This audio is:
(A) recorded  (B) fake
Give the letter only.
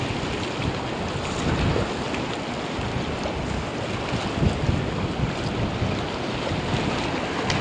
A